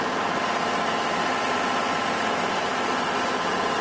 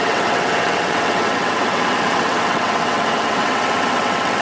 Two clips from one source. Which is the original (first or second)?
first